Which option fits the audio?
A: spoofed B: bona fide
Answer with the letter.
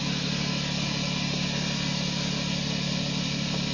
B